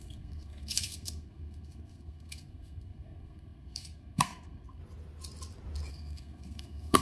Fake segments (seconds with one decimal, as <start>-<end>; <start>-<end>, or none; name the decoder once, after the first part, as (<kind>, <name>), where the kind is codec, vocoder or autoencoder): 0.0-4.8 (codec, SNAC); 5.9-7.0